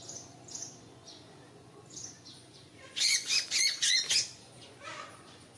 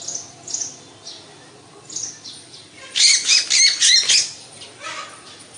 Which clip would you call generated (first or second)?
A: first